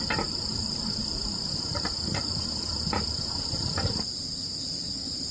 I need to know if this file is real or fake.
real